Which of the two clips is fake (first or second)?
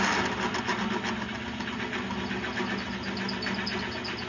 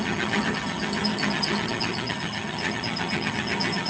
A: second